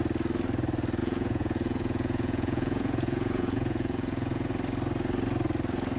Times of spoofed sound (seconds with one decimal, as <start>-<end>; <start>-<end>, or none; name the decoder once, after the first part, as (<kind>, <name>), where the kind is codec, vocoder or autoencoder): 1.0-4.5 (vocoder, Vocos)